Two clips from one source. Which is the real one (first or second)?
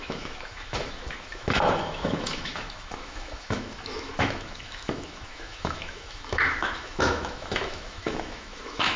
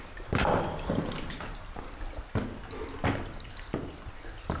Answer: second